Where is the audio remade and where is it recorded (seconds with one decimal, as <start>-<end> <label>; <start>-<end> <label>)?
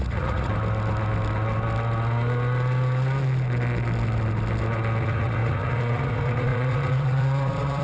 0.0-0.5 remade; 0.5-5.0 recorded; 5.0-7.8 remade